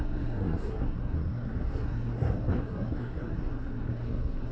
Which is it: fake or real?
fake